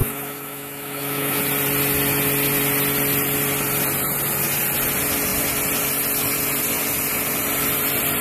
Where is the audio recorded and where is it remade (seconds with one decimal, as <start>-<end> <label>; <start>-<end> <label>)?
0.0-1.4 remade; 1.4-8.2 recorded